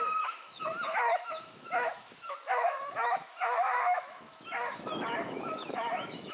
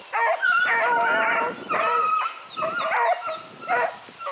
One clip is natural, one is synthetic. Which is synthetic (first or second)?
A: first